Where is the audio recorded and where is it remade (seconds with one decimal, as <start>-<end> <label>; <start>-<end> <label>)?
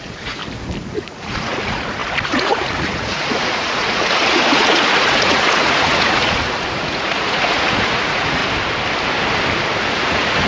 0.0-0.4 remade; 0.4-0.9 recorded; 0.9-8.4 remade; 8.4-9.8 recorded; 9.8-10.5 remade